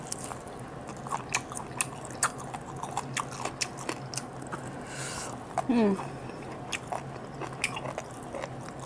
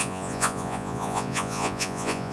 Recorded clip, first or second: first